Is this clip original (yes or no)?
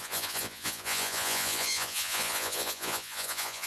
no